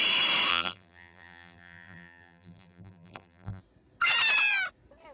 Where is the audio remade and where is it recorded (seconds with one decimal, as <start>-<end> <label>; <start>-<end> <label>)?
0.0-0.5 recorded; 0.5-3.6 remade; 3.6-5.1 recorded